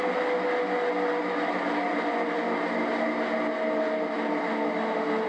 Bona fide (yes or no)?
yes